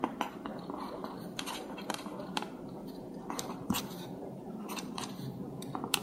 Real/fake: fake